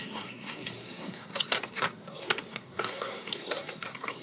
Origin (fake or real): fake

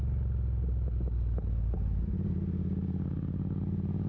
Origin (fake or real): real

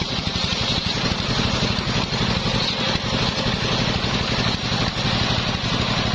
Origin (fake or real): real